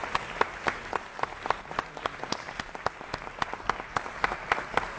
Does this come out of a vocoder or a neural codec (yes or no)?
no